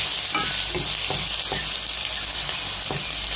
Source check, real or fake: real